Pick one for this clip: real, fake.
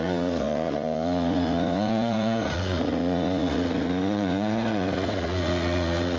fake